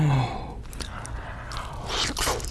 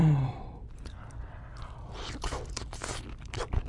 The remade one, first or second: second